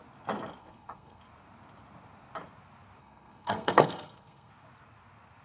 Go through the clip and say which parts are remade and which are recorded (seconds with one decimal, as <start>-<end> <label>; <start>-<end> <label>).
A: 0.0-0.6 recorded; 0.6-1.2 remade; 1.2-3.0 recorded; 3.0-4.5 remade; 4.5-5.4 recorded